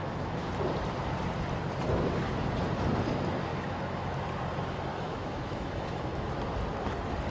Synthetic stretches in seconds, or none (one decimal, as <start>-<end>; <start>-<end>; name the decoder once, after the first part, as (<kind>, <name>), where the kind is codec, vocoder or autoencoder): 0.0-0.5 (autoencoder, DAC-VAE); 3.5-4.1; 4.9-6.3